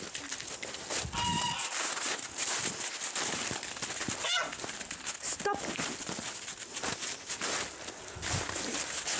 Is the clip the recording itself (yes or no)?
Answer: yes